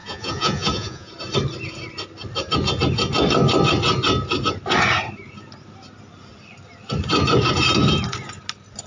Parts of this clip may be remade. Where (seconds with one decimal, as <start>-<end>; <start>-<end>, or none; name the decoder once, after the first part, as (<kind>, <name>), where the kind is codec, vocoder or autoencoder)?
0.0-1.1 (vocoder, Vocos)